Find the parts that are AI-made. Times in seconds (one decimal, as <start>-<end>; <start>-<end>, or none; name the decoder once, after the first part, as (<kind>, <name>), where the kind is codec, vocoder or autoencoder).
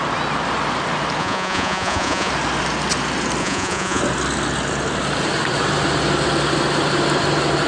1.2-2.3 (vocoder, Vocos); 3.4-4.0